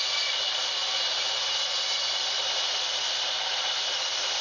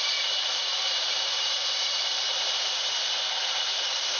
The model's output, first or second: second